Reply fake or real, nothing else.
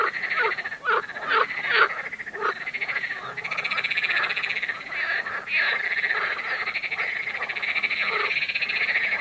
real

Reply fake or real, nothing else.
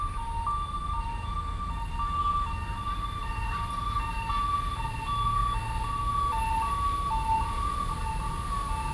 real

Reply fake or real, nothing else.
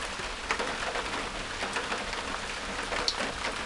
real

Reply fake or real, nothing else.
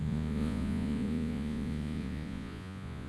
fake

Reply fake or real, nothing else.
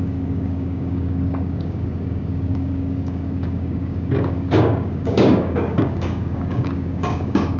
fake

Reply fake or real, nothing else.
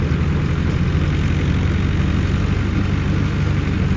real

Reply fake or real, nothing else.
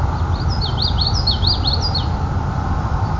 real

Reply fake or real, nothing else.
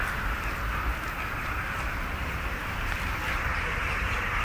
real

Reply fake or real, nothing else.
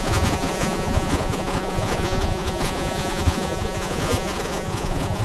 fake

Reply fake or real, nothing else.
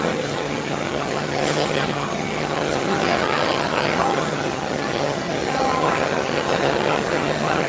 fake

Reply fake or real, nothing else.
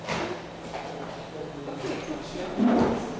real